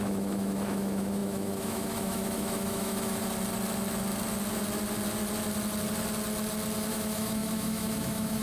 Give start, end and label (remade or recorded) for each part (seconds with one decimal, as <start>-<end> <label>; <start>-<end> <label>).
0.0-3.2 remade; 3.2-6.9 recorded; 6.9-8.4 remade